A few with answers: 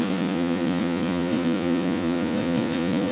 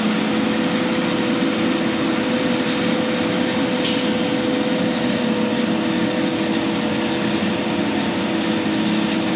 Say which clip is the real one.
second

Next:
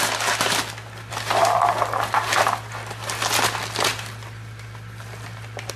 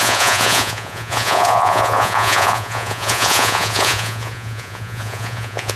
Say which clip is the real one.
first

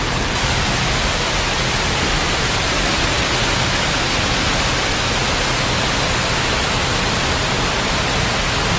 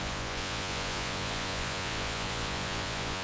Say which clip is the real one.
first